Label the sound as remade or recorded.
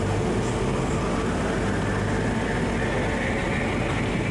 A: recorded